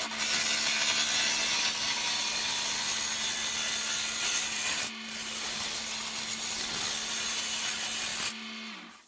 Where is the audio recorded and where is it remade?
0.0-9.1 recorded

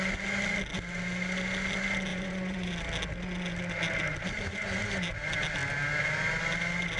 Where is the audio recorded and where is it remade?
0.0-2.1 recorded; 2.1-2.7 remade; 2.7-7.0 recorded

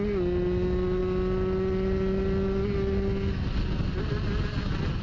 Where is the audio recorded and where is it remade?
0.0-5.0 recorded